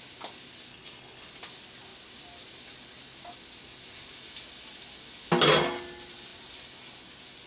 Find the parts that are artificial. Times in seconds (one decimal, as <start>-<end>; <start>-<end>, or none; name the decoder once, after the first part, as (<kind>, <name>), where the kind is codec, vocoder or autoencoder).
0.7-1.3 (codec, HILCodec)